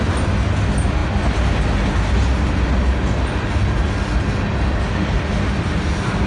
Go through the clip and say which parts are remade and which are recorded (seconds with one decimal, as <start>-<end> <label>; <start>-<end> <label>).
0.0-6.3 recorded

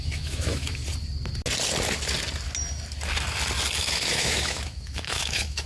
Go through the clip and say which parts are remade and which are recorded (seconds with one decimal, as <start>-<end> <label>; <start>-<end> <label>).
0.0-0.8 remade; 0.8-3.8 recorded; 3.8-5.7 remade

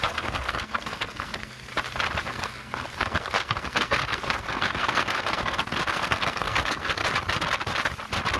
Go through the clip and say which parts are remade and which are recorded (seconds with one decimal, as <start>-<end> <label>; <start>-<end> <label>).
0.0-1.7 remade; 1.7-2.2 recorded; 2.2-7.0 remade; 7.0-8.4 recorded

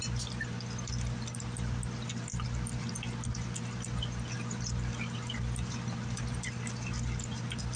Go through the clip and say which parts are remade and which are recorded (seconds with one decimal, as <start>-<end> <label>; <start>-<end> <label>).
0.0-7.8 recorded

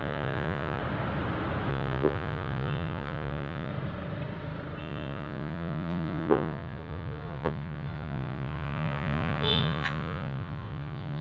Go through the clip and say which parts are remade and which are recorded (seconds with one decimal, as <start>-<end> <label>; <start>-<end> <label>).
0.0-0.8 remade; 0.8-1.7 recorded; 1.7-3.7 remade; 3.7-4.8 recorded; 4.8-11.2 remade